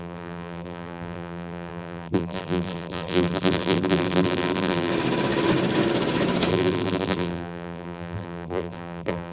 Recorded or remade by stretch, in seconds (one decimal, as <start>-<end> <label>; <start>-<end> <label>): 0.0-4.9 remade; 4.9-6.5 recorded; 6.5-9.3 remade